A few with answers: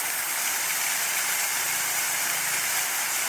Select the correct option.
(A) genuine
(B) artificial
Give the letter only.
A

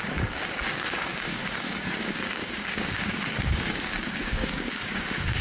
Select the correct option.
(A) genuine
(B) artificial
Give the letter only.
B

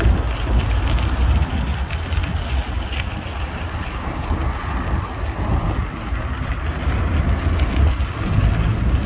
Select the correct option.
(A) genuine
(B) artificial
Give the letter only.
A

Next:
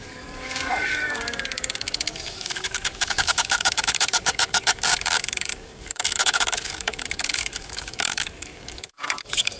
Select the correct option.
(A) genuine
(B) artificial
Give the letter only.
B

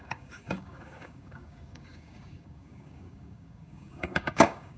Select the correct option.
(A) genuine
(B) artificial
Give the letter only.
B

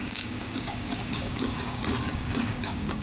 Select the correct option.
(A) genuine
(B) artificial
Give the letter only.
B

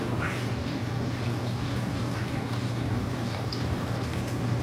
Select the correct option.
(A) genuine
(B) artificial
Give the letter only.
B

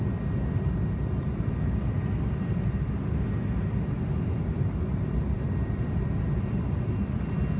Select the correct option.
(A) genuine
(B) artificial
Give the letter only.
A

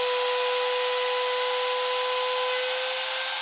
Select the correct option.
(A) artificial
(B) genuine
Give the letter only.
B